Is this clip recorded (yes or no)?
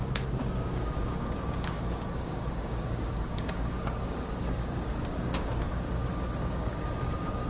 no